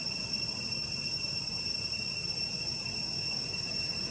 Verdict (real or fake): fake